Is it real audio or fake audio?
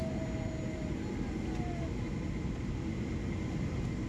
real